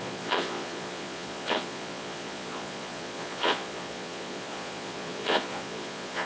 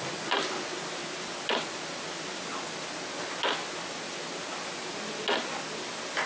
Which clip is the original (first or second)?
second